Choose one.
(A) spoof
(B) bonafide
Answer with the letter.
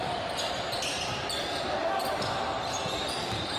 B